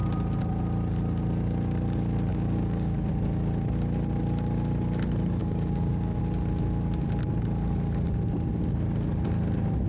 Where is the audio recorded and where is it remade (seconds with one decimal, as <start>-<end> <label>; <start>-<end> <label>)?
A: 0.0-2.3 recorded; 2.3-3.1 remade; 3.1-5.4 recorded; 5.4-6.2 remade; 6.2-9.9 recorded